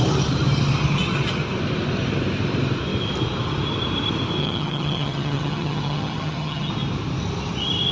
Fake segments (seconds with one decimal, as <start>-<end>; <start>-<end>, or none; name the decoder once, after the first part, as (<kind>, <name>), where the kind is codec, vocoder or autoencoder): 4.4-6.7 (vocoder, HiFi-GAN)